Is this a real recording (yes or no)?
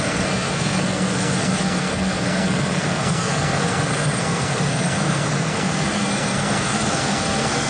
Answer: no